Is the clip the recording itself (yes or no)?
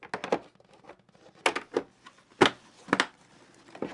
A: yes